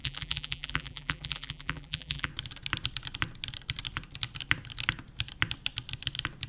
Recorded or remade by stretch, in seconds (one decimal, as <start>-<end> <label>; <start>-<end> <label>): 0.0-2.3 remade; 2.3-6.5 recorded